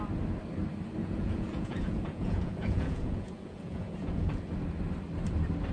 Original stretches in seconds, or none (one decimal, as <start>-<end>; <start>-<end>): 0.0-1.0; 4.4-5.7